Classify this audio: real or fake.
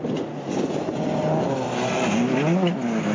real